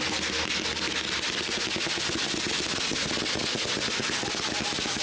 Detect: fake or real real